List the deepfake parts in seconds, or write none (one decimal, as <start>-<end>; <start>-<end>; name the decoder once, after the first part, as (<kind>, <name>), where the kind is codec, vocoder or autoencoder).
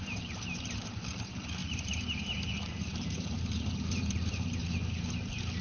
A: 0.0-4.6 (vocoder, BigVGAN v2)